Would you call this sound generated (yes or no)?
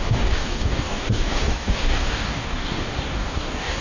yes